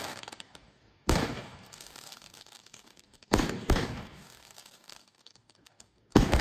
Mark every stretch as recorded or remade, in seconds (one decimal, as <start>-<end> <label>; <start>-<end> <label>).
0.0-6.4 remade